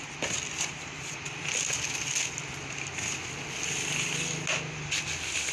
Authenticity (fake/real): real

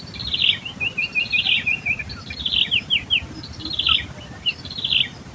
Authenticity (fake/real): real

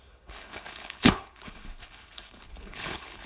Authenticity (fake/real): fake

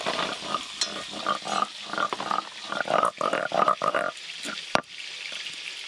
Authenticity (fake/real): real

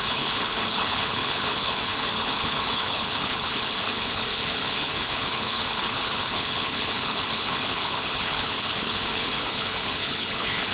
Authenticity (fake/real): fake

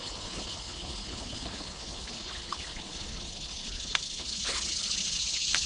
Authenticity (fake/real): fake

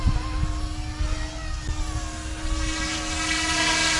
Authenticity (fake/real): real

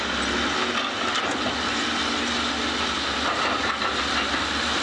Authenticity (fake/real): real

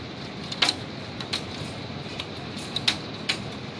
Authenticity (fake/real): real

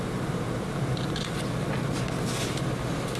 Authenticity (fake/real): real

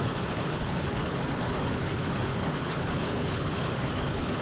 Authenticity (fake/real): fake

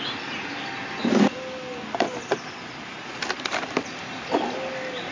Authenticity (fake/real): real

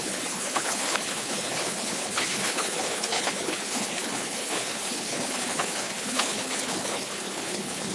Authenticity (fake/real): fake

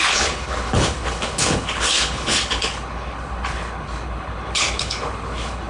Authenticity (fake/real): fake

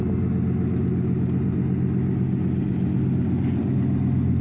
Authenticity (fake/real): real